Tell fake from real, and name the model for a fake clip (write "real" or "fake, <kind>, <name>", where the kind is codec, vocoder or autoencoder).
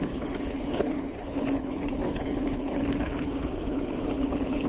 fake, codec, HILCodec